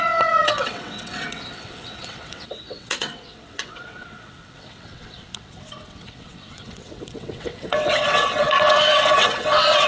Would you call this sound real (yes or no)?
no